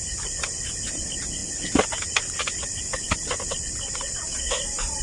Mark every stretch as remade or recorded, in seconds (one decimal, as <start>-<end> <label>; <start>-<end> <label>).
0.0-4.3 recorded; 4.3-5.0 remade